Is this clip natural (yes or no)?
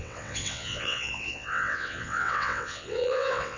no